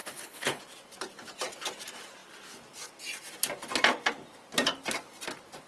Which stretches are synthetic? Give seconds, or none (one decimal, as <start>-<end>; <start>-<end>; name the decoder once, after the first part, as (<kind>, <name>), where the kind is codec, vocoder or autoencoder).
0.0-0.6 (codec, HILCodec)